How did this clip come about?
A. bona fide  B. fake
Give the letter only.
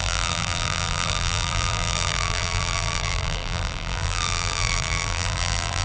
B